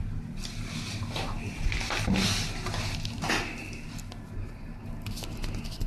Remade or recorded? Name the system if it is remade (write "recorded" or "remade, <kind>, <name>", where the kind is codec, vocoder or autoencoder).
recorded